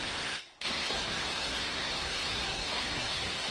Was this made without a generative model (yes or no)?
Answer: no